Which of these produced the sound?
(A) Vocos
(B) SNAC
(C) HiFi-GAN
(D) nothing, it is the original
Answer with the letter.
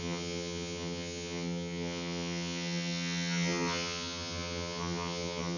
C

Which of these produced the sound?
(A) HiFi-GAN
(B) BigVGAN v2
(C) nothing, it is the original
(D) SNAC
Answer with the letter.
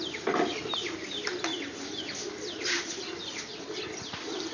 C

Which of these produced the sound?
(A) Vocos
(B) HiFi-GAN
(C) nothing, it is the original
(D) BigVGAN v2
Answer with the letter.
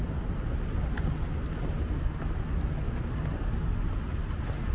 C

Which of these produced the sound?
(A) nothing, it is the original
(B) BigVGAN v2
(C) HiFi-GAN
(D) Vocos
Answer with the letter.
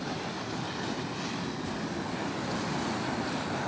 A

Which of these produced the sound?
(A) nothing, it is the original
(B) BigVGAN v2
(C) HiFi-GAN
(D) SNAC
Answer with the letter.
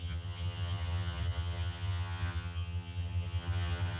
C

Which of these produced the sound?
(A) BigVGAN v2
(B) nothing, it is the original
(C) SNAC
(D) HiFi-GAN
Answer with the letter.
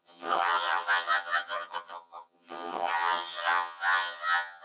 D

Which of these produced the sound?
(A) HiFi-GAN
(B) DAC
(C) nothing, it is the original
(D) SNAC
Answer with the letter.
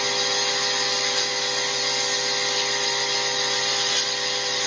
C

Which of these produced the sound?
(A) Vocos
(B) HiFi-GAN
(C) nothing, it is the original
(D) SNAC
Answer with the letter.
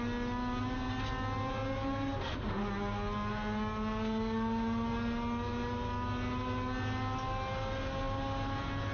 C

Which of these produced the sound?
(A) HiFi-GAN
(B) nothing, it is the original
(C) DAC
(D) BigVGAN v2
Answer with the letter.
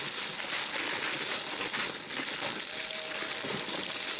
B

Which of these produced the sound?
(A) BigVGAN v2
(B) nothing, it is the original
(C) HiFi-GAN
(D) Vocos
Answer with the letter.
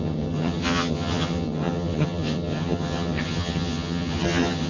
C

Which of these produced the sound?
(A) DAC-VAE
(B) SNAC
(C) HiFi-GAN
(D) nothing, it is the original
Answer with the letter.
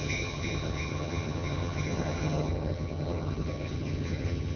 C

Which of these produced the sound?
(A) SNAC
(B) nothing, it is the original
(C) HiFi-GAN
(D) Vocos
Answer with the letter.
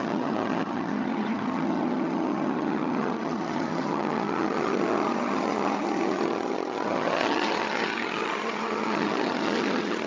C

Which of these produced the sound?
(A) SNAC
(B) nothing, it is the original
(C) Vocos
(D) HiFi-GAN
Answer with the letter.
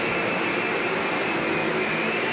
B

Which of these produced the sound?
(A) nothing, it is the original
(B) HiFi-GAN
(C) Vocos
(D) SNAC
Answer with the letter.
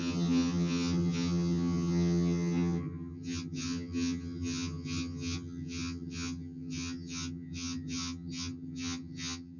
B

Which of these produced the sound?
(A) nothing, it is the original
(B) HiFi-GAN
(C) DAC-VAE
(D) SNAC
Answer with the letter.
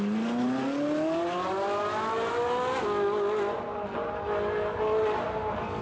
A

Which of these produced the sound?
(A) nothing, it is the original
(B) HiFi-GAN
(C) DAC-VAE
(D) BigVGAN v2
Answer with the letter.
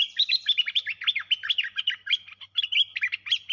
A